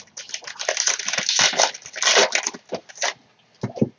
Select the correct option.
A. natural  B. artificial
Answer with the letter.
A